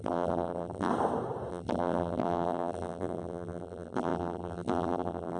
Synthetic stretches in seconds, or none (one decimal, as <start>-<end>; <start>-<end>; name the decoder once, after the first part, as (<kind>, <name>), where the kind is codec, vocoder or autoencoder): 0.0-0.9 (vocoder, BigVGAN v2); 1.5-5.4